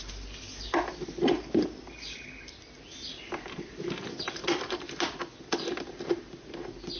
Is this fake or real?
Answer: real